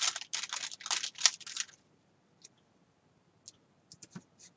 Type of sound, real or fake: real